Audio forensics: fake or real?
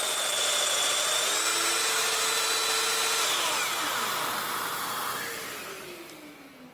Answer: real